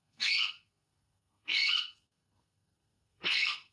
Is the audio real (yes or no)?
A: no